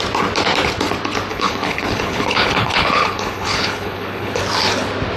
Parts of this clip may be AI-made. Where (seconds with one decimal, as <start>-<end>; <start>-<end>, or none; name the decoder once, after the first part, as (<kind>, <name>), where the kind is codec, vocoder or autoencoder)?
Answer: 1.3-4.4 (codec, HILCodec)